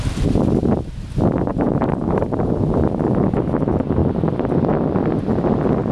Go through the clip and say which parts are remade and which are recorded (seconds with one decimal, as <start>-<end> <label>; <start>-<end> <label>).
0.0-1.5 recorded; 1.5-2.7 remade; 2.7-5.9 recorded